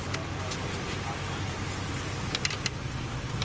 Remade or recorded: recorded